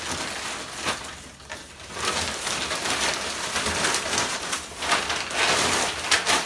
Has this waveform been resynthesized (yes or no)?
no